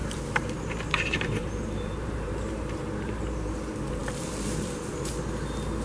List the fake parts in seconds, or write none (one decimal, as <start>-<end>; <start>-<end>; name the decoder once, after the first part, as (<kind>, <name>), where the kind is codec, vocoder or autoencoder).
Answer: 0.0-3.5 (vocoder, BigVGAN v2)